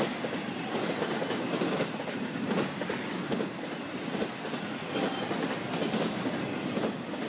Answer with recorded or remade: recorded